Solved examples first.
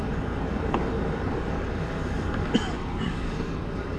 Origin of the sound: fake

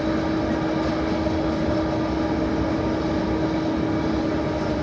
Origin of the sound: real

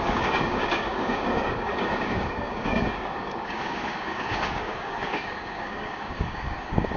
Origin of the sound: fake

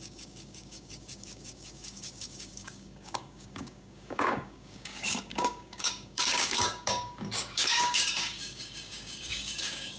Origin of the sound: fake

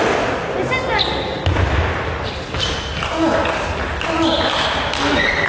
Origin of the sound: real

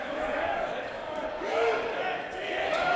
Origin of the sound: fake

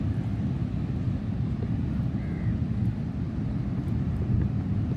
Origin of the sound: real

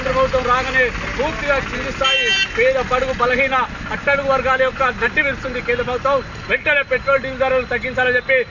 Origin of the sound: real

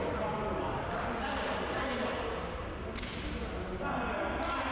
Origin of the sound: real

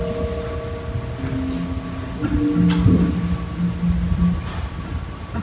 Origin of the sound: real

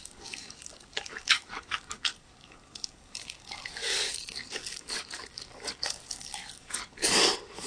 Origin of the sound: fake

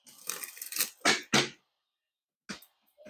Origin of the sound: real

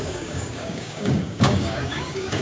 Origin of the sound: fake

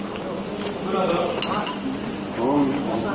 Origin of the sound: real